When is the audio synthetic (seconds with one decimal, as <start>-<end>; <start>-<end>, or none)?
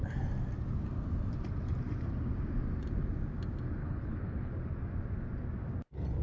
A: 3.8-4.5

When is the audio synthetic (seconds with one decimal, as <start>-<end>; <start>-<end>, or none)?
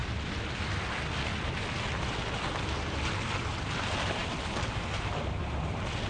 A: none